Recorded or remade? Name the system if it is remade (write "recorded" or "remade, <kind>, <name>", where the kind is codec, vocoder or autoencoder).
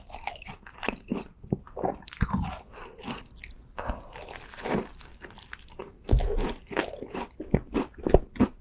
recorded